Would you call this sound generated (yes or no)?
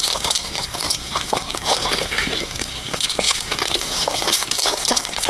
yes